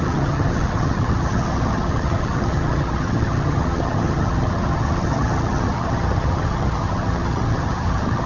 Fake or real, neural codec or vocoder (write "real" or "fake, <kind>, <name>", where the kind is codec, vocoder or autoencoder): fake, vocoder, HiFi-GAN